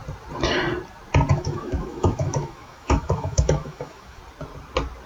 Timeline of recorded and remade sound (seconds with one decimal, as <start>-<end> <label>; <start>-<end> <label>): 0.0-1.3 recorded; 1.3-4.2 remade; 4.2-5.1 recorded

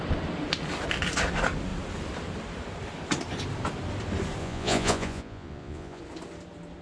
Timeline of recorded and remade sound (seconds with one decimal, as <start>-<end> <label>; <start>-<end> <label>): 0.0-4.4 recorded; 4.4-6.0 remade; 6.0-6.8 recorded